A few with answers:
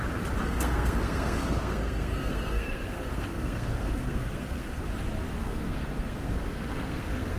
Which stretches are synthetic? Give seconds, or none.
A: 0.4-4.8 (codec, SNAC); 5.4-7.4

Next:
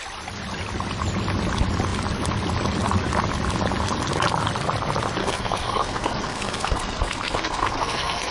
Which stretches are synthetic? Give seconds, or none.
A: 5.2-8.3 (codec, SNAC)

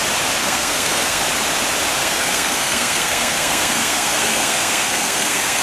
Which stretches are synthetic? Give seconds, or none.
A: 0.4-1.2 (codec, SNAC); 2.0-5.6

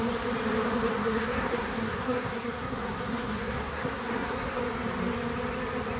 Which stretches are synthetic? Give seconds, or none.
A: 1.0-4.6 (codec, SNAC)

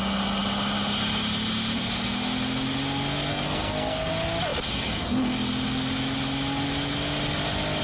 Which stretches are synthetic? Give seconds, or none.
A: 3.3-4.1 (codec, SNAC)

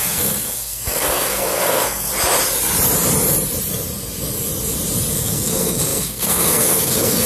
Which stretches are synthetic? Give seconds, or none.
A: 0.0-2.1 (codec, SNAC); 5.1-7.3

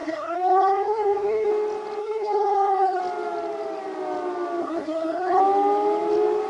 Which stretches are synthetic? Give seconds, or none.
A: 0.0-1.5 (codec, SNAC); 2.0-3.0; 4.6-5.4